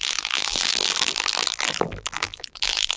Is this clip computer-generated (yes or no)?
yes